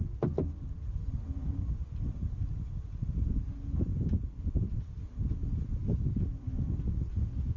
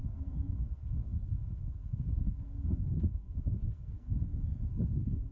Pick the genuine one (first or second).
first